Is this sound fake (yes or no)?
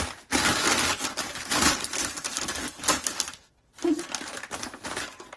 no